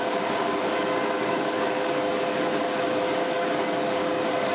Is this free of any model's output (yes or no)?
no